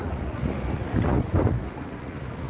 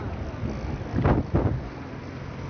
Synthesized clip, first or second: first